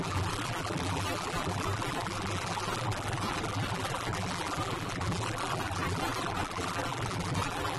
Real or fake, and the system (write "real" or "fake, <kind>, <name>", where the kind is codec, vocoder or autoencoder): fake, vocoder, BigVGAN v2